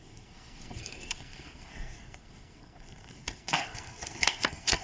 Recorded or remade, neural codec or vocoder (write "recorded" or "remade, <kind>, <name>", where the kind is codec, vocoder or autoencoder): remade, codec, SNAC